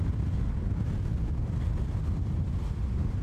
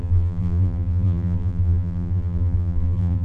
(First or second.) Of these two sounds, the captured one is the first